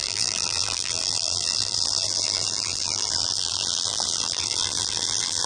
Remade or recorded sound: remade